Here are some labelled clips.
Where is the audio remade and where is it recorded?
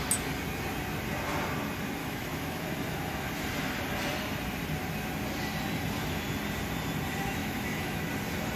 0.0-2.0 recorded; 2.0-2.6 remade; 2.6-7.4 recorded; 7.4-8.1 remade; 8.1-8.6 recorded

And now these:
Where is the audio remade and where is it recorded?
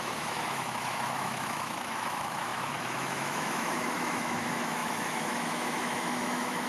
0.0-6.7 remade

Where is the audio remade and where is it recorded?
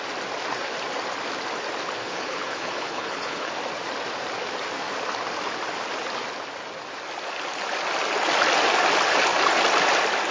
0.0-2.0 recorded; 2.0-3.5 remade; 3.5-10.3 recorded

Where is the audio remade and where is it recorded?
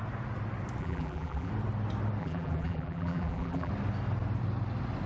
0.0-0.8 recorded; 0.8-1.5 remade; 1.5-2.2 recorded; 2.2-3.7 remade; 3.7-5.1 recorded